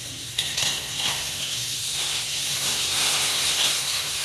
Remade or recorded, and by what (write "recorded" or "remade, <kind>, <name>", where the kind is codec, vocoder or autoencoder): remade, codec, SNAC